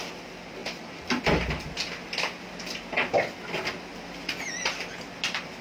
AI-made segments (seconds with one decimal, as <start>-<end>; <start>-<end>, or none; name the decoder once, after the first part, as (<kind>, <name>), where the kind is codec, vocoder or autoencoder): 0.6-1.2 (vocoder, BigVGAN v2)

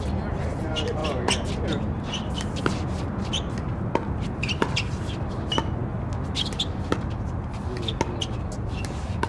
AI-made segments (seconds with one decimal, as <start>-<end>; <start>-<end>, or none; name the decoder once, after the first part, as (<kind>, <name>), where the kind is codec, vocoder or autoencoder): none

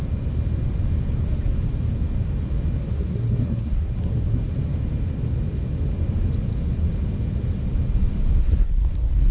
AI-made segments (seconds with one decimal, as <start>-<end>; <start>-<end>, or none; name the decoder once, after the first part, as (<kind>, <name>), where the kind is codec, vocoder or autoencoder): 2.9-4.4 (codec, SNAC); 8.4-9.3

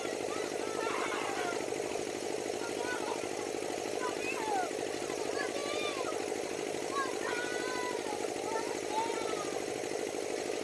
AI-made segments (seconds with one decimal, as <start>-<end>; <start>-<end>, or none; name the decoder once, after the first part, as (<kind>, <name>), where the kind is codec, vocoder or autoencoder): none

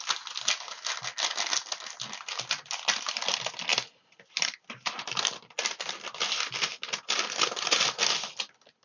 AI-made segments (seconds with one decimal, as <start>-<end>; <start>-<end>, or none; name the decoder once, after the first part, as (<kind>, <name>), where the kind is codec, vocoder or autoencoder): none

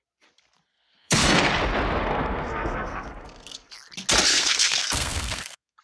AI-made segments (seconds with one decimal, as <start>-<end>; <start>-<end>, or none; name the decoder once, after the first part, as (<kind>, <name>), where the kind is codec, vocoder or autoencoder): 0.7-1.4 (codec, SNAC); 2.0-3.7; 4.3-5.8